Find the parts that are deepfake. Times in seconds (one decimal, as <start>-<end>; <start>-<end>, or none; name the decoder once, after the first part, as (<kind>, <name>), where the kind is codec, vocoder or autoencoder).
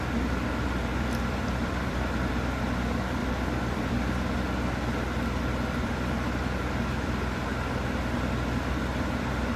0.9-2.3 (vocoder, BigVGAN v2); 3.2-3.9